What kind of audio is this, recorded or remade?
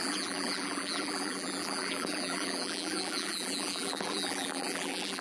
remade